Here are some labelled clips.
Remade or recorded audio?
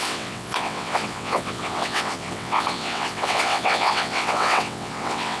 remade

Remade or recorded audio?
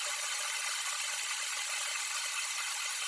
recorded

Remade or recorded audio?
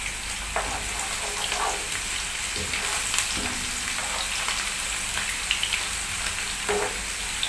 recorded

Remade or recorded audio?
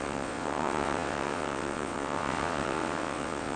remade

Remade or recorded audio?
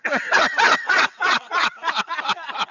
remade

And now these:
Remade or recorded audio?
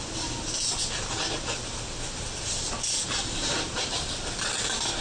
recorded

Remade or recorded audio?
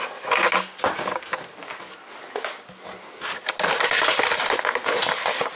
recorded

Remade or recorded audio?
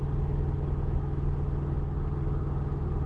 recorded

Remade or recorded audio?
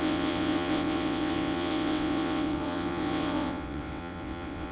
remade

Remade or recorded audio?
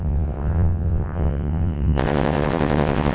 remade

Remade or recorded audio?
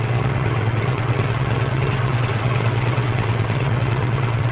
remade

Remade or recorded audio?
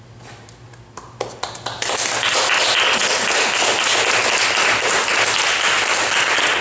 recorded